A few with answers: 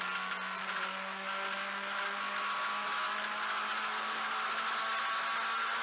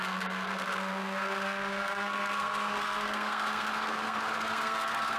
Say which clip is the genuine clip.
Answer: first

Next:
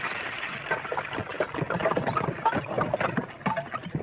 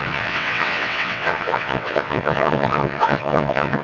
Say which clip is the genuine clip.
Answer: first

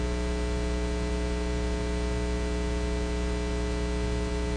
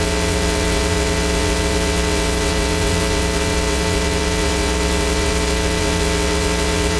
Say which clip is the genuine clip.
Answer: first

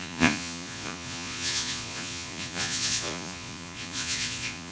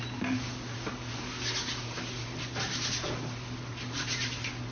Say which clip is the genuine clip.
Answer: second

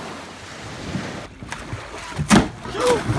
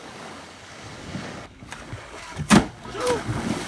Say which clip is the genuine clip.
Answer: first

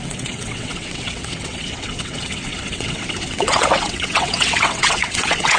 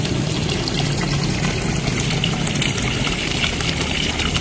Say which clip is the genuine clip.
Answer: second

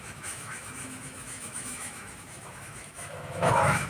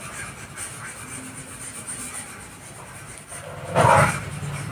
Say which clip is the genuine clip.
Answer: second